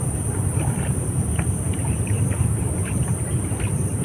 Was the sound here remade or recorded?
recorded